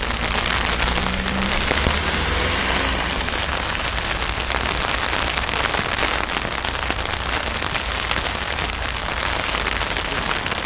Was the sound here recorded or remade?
recorded